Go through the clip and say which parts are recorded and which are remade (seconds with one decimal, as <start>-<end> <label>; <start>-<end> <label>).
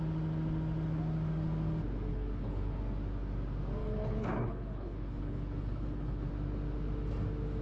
0.0-2.1 recorded; 2.1-2.8 remade; 2.8-3.8 recorded; 3.8-6.3 remade; 6.3-7.6 recorded